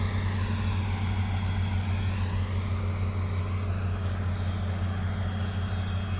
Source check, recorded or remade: recorded